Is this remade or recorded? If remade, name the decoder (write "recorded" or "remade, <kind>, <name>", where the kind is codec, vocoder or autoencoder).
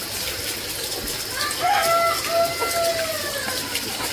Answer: recorded